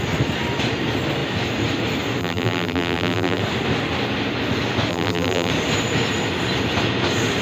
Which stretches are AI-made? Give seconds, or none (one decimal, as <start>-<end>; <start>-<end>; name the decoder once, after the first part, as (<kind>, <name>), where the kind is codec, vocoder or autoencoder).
2.2-3.4 (vocoder, BigVGAN v2); 4.9-5.5